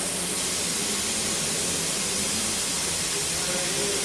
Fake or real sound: real